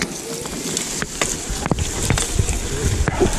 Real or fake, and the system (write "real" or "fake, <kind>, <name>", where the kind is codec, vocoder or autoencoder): real